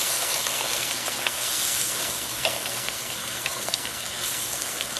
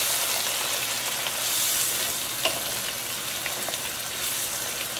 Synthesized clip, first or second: first